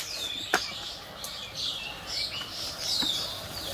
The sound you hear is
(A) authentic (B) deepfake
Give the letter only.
A